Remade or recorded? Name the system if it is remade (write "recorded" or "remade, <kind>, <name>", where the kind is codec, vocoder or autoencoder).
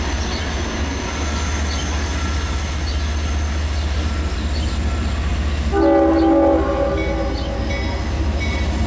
recorded